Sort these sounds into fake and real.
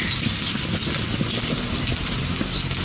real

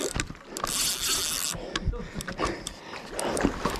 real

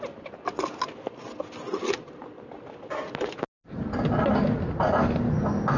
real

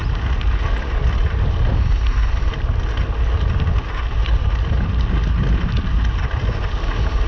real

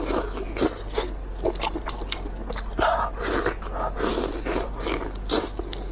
real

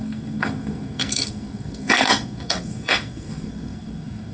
fake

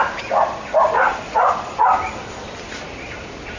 real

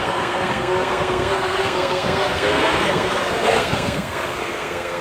fake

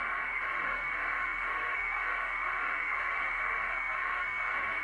fake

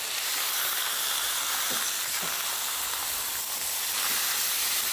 real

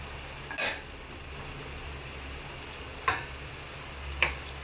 real